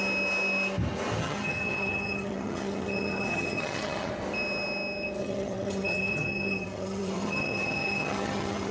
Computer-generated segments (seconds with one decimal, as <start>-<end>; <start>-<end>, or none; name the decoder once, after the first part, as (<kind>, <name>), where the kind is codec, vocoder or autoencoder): 1.2-4.1 (vocoder, HiFi-GAN); 5.2-8.7